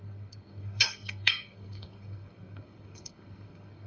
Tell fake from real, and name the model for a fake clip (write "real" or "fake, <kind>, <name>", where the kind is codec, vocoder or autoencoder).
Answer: fake, codec, SNAC